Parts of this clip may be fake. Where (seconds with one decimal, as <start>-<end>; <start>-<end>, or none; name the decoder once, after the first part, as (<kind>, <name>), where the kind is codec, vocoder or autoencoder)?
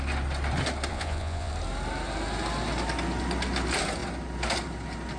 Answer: 0.9-1.5 (vocoder, Vocos)